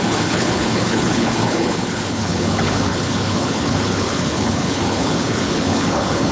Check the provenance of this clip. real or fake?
fake